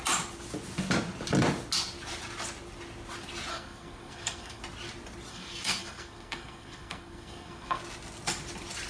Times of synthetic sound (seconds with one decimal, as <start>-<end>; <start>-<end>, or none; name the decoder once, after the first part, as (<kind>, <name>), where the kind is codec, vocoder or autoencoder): 3.5-4.6 (codec, SNAC); 5.3-7.8